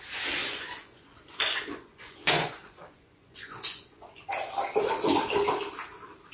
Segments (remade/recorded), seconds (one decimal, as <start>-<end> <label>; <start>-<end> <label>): 0.0-0.4 recorded; 0.4-4.2 remade; 4.2-6.3 recorded